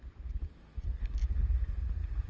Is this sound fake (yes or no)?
no